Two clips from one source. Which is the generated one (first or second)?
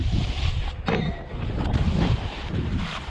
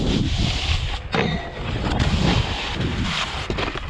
first